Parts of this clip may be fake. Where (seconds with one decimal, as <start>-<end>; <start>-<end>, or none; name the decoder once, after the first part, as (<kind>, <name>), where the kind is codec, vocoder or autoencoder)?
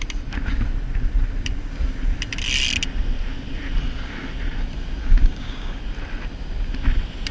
5.0-5.8 (codec, DAC)